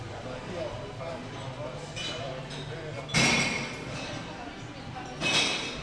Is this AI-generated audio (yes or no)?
no